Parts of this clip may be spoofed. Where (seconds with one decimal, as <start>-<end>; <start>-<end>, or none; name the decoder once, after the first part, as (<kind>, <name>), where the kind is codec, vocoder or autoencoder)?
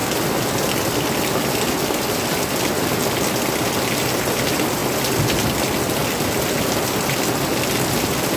none